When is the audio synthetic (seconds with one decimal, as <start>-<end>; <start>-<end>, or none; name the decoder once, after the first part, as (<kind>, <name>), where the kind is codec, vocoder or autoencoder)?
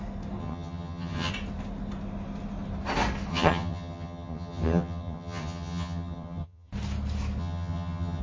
0.4-1.3 (vocoder, HiFi-GAN); 3.3-6.7; 7.4-8.2